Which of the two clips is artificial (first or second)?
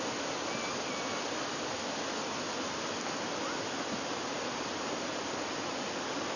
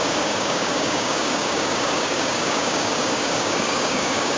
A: second